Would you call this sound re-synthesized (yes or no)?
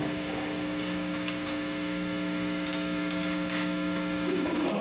yes